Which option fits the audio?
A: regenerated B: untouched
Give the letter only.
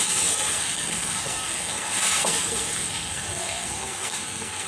A